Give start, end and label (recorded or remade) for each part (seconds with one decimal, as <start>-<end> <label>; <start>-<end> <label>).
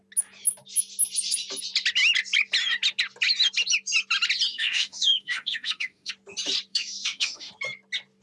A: 0.0-4.5 recorded; 4.5-6.1 remade; 6.1-6.7 recorded; 6.7-7.5 remade; 7.5-8.2 recorded